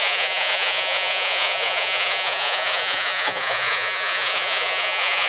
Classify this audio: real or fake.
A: fake